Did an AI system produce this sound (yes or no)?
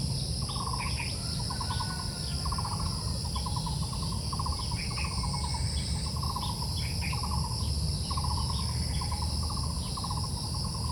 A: no